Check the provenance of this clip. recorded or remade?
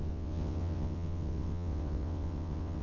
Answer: remade